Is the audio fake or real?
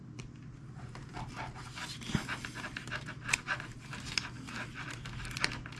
real